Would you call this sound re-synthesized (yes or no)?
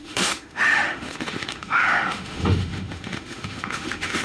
yes